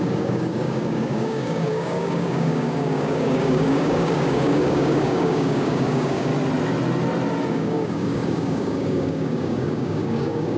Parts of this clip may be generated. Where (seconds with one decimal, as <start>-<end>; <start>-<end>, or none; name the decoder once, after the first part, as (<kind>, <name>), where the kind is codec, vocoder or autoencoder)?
0.0-6.3 (codec, DAC); 7.5-10.6